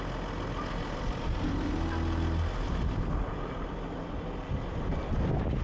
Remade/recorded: recorded